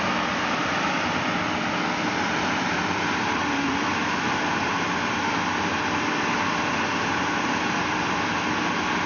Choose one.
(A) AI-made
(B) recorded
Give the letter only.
A